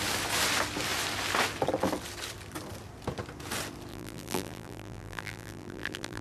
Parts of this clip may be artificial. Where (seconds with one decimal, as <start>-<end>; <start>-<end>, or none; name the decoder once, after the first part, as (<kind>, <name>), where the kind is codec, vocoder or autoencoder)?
3.9-6.2 (vocoder, BigVGAN v2)